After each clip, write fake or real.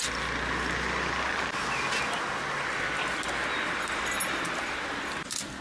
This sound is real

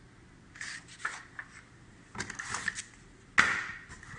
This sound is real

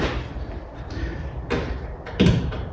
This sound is fake